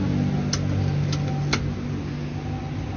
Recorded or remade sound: recorded